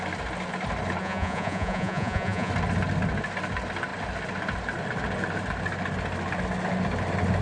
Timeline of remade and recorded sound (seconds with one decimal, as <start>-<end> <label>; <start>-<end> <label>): 0.0-1.0 recorded; 1.0-2.5 remade; 2.5-7.4 recorded